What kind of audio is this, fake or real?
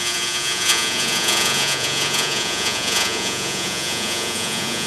fake